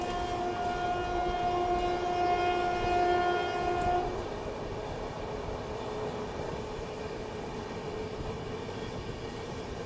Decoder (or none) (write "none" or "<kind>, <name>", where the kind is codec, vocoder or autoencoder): none